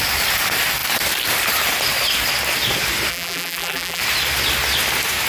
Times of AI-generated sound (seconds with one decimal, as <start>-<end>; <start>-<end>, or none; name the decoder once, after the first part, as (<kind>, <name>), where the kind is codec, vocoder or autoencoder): 3.1-4.0 (vocoder, BigVGAN v2)

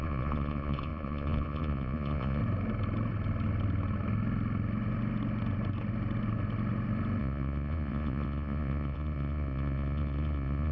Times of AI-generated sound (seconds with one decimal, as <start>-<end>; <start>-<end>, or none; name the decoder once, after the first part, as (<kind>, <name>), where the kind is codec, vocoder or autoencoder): 0.0-2.4 (vocoder, Vocos); 7.2-10.7

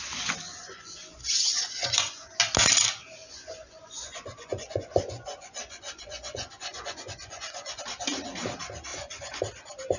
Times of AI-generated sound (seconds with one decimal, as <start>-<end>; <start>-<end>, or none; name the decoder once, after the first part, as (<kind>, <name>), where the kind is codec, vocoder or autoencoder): 0.6-2.4 (vocoder, Vocos); 3.2-7.8; 8.9-9.4

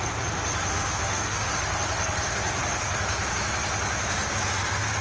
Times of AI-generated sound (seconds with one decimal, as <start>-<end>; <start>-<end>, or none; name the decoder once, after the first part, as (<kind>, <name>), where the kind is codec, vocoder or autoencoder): 0.7-1.5 (autoencoder, DAC-VAE)

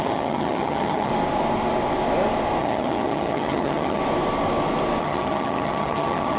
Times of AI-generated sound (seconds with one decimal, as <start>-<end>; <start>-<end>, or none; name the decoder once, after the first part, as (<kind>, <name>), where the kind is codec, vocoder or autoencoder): 0.0-1.1 (vocoder, HiFi-GAN); 2.6-4.0; 5.0-6.4

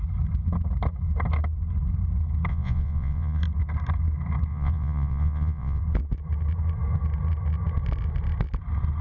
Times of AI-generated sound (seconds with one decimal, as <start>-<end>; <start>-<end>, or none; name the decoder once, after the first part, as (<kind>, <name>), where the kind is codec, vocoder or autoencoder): 2.5-3.4 (vocoder, Vocos); 4.5-5.8

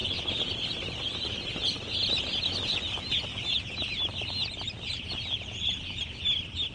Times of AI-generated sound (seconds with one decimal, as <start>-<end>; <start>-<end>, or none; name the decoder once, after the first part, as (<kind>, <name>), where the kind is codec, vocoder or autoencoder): none

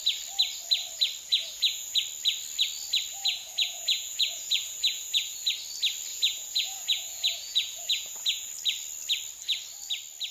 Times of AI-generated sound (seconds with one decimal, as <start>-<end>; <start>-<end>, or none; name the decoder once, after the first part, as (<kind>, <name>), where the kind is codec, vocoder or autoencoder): 1.3-2.0 (vocoder, Vocos); 3.1-5.5; 6.1-8.5